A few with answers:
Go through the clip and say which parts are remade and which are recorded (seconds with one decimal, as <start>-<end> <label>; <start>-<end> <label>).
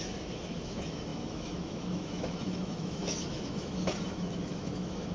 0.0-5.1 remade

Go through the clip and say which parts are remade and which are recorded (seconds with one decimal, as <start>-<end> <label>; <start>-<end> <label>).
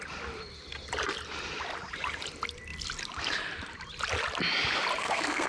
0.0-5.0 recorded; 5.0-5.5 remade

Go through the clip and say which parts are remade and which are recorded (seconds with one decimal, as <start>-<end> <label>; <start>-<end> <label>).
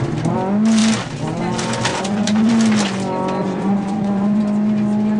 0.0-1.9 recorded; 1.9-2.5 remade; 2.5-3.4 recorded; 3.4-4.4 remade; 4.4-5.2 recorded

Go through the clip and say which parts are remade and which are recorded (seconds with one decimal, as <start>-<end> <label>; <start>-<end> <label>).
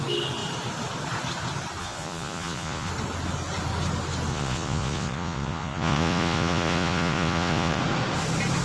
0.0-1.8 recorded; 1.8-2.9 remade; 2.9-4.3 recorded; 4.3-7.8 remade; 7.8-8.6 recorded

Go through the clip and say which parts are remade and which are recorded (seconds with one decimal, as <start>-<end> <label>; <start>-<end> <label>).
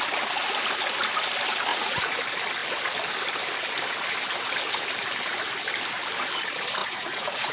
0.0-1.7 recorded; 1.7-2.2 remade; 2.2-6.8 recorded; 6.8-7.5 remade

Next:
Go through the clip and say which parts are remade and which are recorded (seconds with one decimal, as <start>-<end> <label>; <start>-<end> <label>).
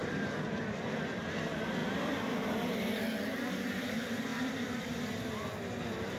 0.0-1.4 remade; 1.4-1.8 recorded; 1.8-2.7 remade; 2.7-4.3 recorded; 4.3-5.1 remade; 5.1-6.2 recorded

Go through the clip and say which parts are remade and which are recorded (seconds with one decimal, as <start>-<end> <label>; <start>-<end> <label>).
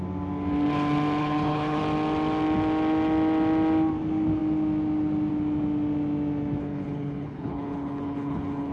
0.0-1.2 recorded; 1.2-1.8 remade; 1.8-6.6 recorded; 6.6-8.7 remade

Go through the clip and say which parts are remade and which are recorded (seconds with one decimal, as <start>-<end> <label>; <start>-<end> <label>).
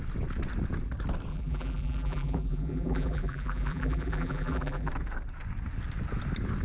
0.0-1.3 recorded; 1.3-4.9 remade; 4.9-6.6 recorded